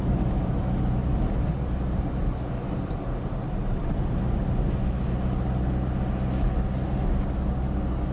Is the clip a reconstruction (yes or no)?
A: no